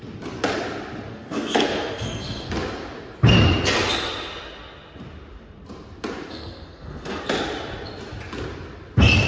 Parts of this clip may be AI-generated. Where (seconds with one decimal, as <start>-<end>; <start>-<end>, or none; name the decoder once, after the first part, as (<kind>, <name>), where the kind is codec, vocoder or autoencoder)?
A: 1.1-2.5 (codec, SNAC); 6.3-7.2